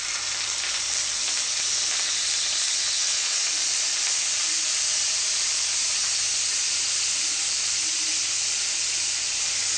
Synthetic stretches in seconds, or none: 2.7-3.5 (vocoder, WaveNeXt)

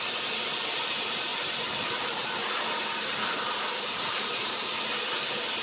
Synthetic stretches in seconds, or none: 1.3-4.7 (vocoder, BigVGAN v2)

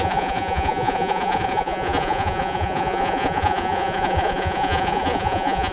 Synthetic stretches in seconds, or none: 0.0-5.7 (vocoder, Vocos)

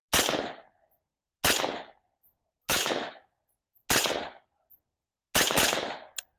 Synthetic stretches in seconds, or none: 2.7-3.4 (autoencoder, DAC-VAE)

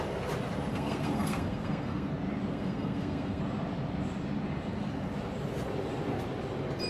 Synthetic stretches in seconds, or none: 0.7-2.1 (codec, SNAC); 2.5-3.4